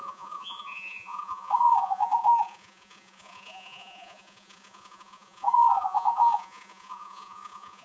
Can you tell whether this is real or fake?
fake